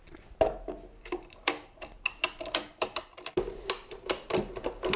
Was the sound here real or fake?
real